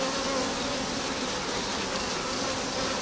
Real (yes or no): yes